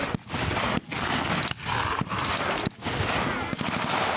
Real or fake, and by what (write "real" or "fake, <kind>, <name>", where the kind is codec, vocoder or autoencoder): real